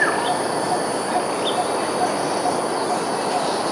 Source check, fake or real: real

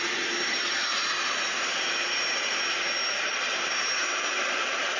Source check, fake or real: fake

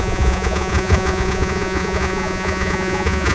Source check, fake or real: fake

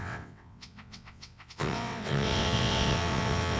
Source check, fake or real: fake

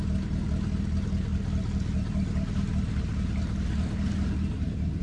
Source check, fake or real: real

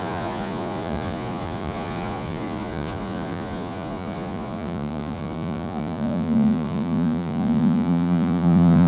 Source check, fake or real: fake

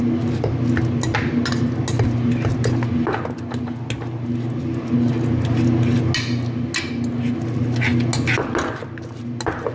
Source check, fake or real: real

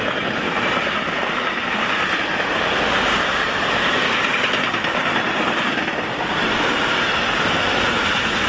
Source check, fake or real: real